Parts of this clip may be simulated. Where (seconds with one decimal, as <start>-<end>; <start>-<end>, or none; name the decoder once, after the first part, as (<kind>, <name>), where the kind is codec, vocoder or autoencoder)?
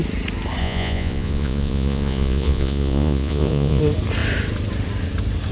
0.6-3.8 (vocoder, Vocos)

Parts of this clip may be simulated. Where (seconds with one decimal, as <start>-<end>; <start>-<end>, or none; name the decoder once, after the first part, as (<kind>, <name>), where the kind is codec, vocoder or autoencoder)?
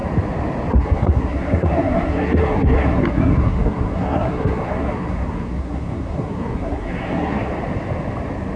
0.7-7.5 (codec, SNAC)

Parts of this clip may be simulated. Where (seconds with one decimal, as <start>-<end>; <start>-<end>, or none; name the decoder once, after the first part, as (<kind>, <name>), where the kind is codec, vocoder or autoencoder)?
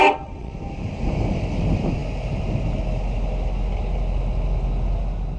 0.0-0.5 (vocoder, WaveNeXt)